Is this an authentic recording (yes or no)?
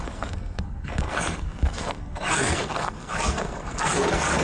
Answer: no